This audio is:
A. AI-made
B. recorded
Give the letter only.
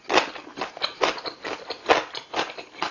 B